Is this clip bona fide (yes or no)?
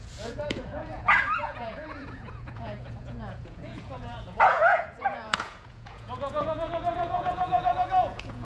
no